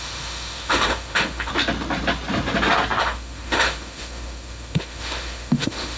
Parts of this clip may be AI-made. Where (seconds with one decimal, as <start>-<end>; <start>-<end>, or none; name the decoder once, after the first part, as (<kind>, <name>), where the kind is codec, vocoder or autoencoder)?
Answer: 0.0-1.5 (autoencoder, DAC-VAE); 3.0-6.0